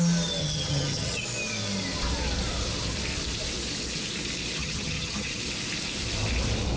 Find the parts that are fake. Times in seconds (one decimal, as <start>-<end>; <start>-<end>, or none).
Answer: 0.4-1.2; 4.6-5.4